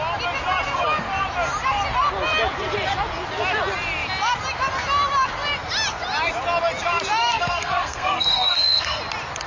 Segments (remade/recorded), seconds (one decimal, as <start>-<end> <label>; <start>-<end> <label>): 0.0-7.2 recorded; 7.2-9.0 remade; 9.0-9.5 recorded